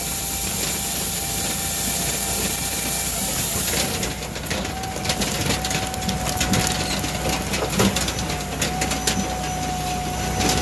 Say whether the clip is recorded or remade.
recorded